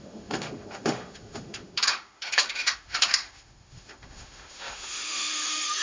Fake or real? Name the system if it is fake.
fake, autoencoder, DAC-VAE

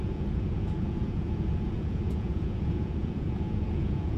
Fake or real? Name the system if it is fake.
fake, vocoder, Vocos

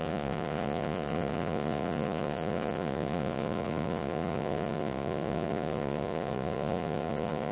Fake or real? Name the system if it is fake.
fake, vocoder, Vocos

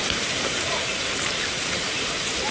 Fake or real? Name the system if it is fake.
fake, vocoder, BigVGAN v2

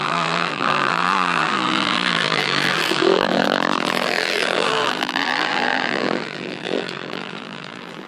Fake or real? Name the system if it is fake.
fake, vocoder, BigVGAN v2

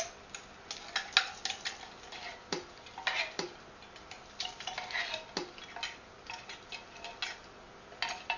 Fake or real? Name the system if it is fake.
real